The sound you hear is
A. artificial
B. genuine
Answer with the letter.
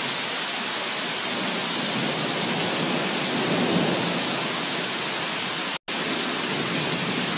B